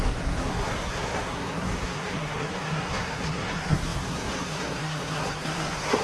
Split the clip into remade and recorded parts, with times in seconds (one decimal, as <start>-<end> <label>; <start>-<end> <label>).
0.0-6.0 remade